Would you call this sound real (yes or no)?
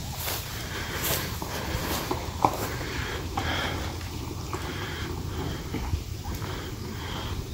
no